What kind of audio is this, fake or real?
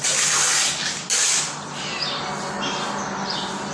real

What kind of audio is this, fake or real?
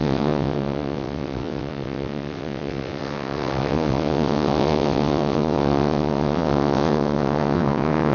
fake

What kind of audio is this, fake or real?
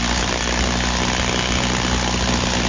real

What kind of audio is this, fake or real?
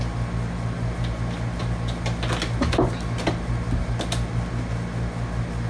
real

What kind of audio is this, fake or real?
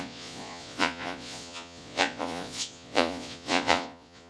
fake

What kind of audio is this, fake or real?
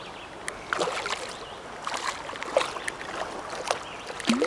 real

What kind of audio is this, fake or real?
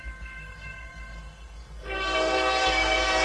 fake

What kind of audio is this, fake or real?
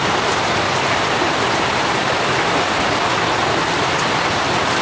real